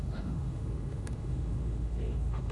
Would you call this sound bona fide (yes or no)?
no